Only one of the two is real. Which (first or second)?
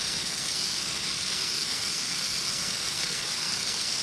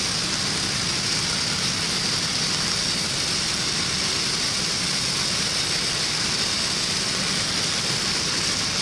second